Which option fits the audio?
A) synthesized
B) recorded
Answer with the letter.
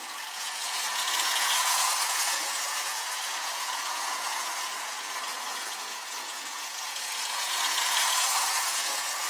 A